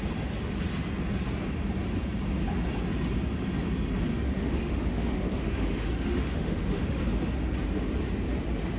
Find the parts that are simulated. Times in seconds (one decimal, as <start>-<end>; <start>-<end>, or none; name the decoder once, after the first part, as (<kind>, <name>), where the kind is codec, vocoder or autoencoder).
4.1-7.0 (autoencoder, DAC-VAE)